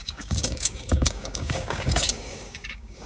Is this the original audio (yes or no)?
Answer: no